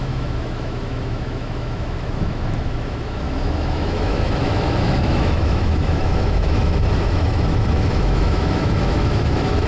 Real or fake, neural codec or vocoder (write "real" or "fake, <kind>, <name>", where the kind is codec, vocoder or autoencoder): fake, autoencoder, DAC-VAE